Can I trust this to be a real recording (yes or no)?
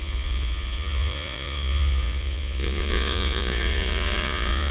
no